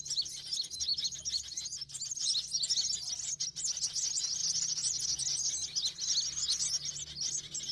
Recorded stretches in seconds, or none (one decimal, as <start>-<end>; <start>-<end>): 0.0-7.7